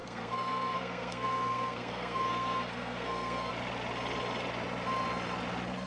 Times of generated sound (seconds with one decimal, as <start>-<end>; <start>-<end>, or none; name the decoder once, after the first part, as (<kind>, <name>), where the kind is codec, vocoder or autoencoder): 0.0-3.5 (codec, SNAC)